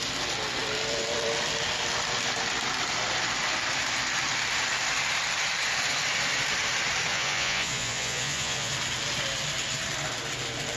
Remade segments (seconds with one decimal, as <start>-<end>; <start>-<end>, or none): 7.1-8.7